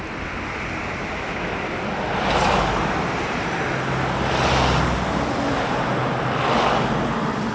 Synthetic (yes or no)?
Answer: no